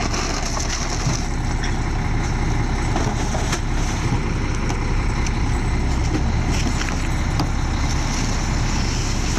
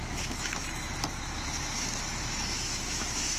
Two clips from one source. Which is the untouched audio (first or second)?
first